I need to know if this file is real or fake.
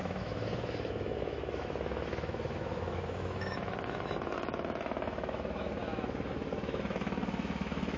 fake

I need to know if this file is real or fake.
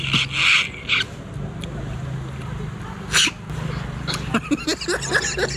real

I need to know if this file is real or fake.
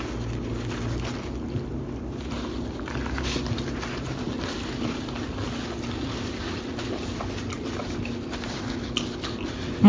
real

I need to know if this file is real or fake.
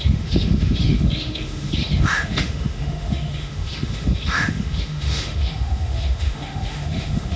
fake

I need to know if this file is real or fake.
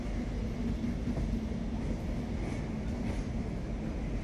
real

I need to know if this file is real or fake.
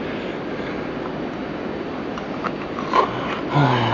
real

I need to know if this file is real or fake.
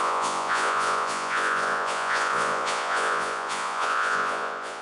fake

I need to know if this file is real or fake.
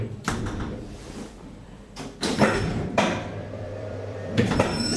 fake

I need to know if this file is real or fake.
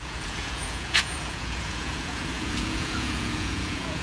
fake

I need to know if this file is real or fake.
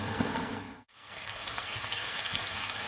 fake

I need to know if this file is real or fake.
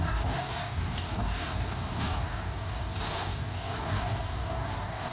fake